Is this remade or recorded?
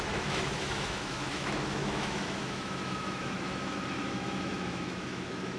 remade